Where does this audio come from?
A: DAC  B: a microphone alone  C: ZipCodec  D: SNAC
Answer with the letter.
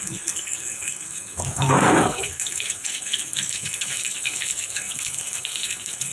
D